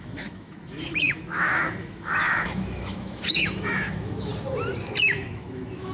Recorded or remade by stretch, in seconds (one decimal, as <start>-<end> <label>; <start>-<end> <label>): 0.0-4.3 remade; 4.3-5.0 recorded; 5.0-5.9 remade

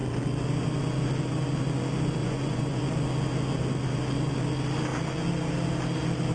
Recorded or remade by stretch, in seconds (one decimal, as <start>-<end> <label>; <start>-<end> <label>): 0.0-2.2 recorded; 2.2-2.8 remade; 2.8-6.3 recorded

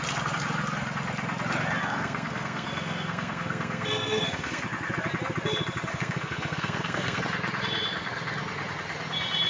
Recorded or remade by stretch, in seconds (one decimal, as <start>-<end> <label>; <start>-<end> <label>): 0.0-1.8 recorded; 1.8-4.6 remade; 4.6-5.9 recorded; 5.9-7.2 remade; 7.2-9.5 recorded

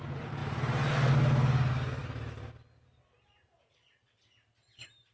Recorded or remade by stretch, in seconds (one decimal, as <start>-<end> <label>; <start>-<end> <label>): 0.0-5.1 recorded

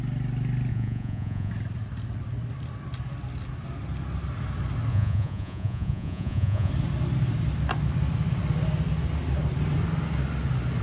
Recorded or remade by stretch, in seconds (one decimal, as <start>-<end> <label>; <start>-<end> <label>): 0.0-0.7 recorded; 0.7-1.5 remade; 1.5-4.9 recorded; 4.9-6.7 remade; 6.7-10.8 recorded

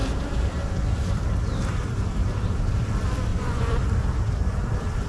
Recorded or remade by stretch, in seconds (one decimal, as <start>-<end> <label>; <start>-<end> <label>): 0.0-3.3 recorded; 3.3-3.8 remade; 3.8-5.1 recorded

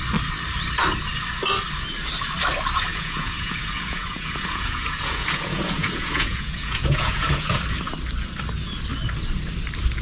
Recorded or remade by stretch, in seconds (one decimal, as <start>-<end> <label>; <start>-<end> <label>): 0.0-2.9 recorded; 2.9-7.6 remade; 7.6-10.0 recorded

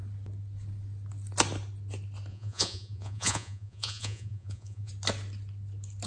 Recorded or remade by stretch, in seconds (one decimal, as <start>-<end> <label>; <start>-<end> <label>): 0.0-2.3 recorded; 2.3-4.9 remade; 4.9-6.1 recorded